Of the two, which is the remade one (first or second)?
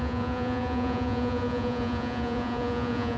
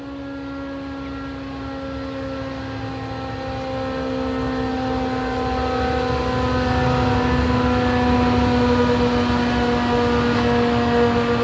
first